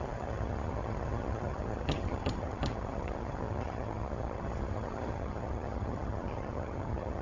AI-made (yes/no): yes